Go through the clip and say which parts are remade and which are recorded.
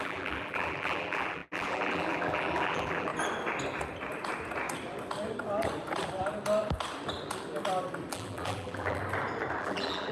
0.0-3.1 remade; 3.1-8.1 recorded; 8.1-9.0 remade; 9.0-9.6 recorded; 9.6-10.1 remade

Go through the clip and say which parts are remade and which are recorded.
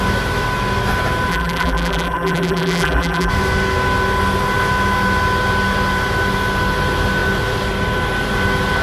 0.0-1.3 recorded; 1.3-3.3 remade; 3.3-8.8 recorded